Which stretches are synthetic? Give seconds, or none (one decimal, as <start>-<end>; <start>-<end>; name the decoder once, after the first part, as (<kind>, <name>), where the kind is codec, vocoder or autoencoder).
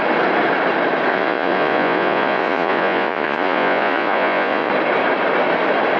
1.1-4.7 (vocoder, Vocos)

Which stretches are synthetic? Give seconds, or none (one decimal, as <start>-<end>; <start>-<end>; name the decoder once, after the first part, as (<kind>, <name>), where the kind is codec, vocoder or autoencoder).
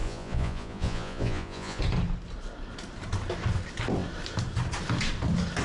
0.0-1.8 (vocoder, Vocos)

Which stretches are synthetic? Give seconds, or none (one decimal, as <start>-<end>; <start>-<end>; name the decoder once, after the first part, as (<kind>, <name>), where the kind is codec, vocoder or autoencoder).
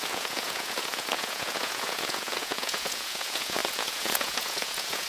0.0-5.1 (vocoder, Vocos)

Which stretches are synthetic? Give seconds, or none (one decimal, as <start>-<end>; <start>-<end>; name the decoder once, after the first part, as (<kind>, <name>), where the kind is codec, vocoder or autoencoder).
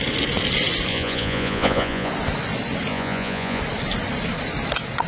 0.9-2.1 (vocoder, Vocos); 2.9-3.6